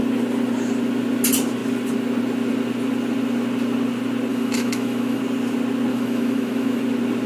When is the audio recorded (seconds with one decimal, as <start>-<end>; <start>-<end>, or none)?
0.0-4.3; 5.2-5.9; 6.8-7.3